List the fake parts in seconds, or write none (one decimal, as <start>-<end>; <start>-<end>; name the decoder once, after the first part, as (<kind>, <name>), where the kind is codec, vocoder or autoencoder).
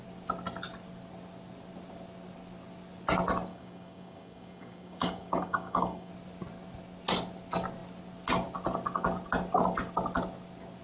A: 3.5-6.1 (codec, DAC)